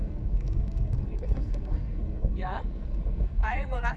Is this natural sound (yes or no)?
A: no